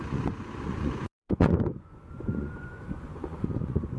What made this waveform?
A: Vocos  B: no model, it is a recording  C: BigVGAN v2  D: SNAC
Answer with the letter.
A